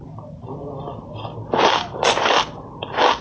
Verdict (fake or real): real